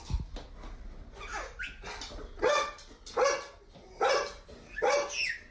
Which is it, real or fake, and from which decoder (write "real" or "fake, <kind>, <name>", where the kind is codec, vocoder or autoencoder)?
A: real